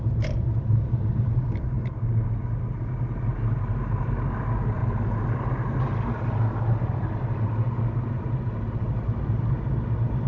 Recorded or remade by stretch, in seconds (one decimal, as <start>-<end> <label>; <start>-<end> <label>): 0.0-10.3 recorded